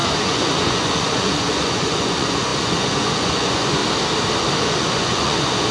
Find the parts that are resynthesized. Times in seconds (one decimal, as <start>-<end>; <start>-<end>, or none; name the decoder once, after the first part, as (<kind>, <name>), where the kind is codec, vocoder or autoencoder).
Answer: 0.0-3.8 (vocoder, Vocos); 4.6-5.7